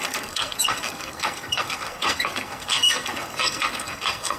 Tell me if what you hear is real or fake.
fake